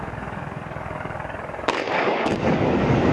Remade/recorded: remade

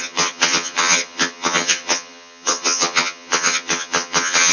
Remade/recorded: remade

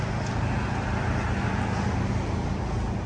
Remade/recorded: recorded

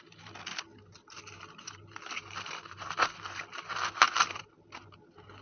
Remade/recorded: recorded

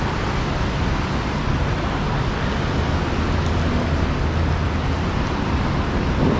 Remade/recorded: recorded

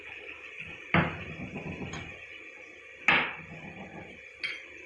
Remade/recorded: recorded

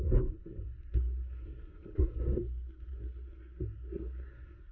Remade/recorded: remade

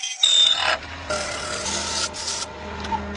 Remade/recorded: recorded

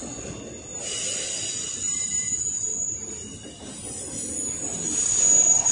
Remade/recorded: recorded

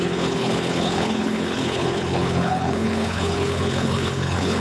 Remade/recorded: remade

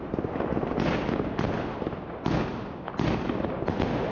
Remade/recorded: recorded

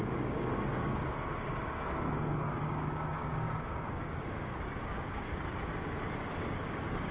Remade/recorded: remade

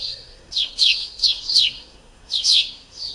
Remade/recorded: remade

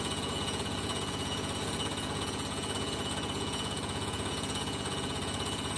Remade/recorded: remade